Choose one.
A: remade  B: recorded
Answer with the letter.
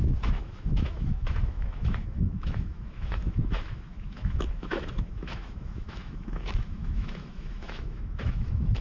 A